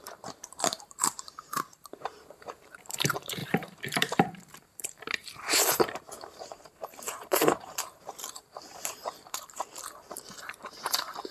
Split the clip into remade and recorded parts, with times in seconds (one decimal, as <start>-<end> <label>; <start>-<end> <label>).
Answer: 0.0-11.3 remade